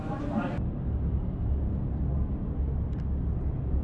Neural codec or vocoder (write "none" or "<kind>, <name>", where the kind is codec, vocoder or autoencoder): none